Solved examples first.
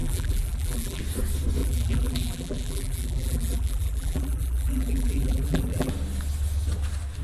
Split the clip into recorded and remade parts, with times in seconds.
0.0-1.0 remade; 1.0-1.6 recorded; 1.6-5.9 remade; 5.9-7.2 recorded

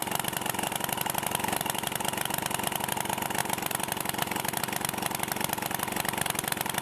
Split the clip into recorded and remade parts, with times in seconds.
0.0-2.4 remade; 2.4-3.4 recorded; 3.4-4.6 remade; 4.6-6.8 recorded